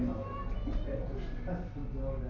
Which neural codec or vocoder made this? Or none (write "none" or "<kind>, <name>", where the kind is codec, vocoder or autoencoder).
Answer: none